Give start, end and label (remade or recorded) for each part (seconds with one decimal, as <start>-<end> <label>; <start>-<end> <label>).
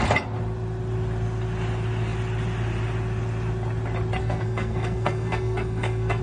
0.0-4.2 recorded; 4.2-6.2 remade